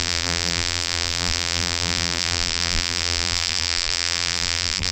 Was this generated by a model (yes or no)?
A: yes